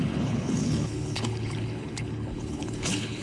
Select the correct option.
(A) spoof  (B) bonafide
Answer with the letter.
A